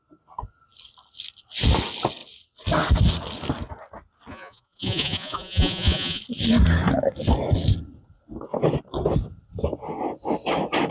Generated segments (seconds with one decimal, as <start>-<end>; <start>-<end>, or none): 4.3-6.2